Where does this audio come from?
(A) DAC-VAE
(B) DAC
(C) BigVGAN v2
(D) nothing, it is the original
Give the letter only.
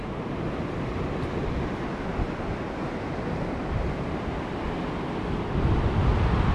D